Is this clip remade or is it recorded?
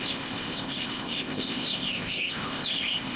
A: remade